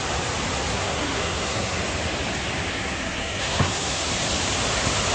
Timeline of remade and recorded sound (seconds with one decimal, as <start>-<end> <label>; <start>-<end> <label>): 0.0-0.7 recorded; 0.7-1.8 remade; 1.8-2.7 recorded; 2.7-4.1 remade; 4.1-5.1 recorded